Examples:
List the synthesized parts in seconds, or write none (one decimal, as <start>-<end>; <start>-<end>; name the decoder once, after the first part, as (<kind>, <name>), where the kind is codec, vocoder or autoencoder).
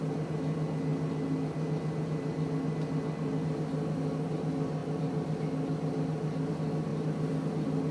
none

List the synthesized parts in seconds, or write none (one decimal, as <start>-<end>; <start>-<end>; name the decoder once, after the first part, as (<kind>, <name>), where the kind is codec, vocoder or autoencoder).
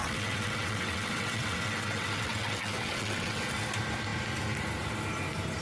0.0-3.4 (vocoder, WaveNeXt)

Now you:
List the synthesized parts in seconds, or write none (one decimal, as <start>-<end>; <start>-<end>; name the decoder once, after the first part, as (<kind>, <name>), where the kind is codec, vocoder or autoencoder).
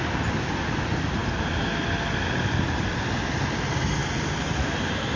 none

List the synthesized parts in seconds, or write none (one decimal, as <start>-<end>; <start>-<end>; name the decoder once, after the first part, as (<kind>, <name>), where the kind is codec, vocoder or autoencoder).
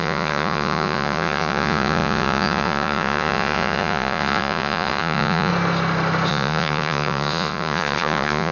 0.0-5.5 (vocoder, Vocos); 6.3-8.5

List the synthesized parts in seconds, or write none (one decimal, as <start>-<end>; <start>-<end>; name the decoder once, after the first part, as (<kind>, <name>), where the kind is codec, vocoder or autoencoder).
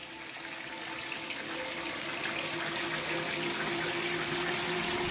none